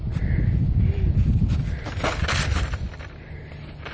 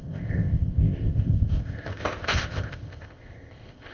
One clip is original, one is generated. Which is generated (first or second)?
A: second